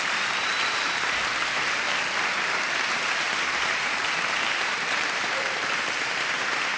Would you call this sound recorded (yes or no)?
no